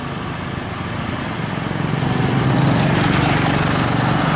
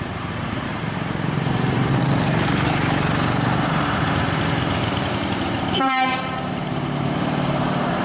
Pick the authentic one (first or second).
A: first